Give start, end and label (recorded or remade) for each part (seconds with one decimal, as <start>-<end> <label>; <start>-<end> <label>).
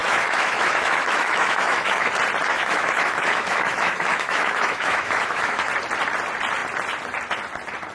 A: 0.0-2.1 remade; 2.1-2.5 recorded; 2.5-5.7 remade; 5.7-7.9 recorded